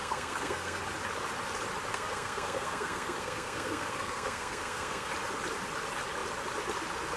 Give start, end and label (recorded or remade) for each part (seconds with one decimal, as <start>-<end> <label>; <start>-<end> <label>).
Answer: 0.0-0.8 remade; 0.8-1.9 recorded; 1.9-5.1 remade; 5.1-7.2 recorded